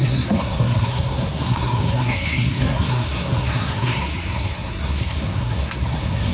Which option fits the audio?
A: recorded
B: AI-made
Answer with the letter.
B